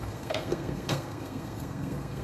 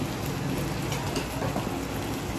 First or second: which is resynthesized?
first